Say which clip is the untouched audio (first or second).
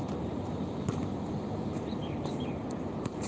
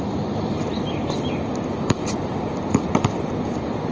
second